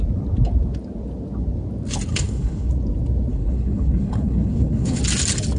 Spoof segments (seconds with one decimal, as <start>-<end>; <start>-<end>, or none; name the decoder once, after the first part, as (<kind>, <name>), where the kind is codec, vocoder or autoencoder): 2.1-2.7 (codec, HILCodec); 3.3-5.0